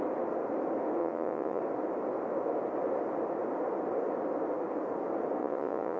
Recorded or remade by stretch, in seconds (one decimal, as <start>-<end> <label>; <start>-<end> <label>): 0.0-1.0 recorded; 1.0-1.6 remade; 1.6-5.4 recorded; 5.4-6.0 remade